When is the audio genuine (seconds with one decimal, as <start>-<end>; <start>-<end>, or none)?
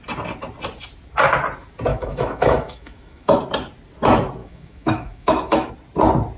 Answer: 0.0-1.9; 3.4-4.4; 5.7-6.4